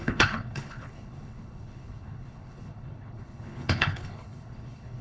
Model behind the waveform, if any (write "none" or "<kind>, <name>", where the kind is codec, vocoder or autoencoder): codec, HILCodec